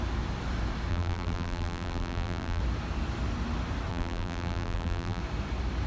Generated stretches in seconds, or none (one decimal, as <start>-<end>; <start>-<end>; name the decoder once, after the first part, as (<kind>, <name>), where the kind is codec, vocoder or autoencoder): 0.9-2.6 (vocoder, BigVGAN v2); 3.9-5.2